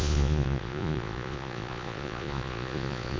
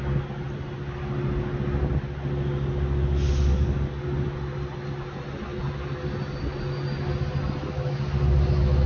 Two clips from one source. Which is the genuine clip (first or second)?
second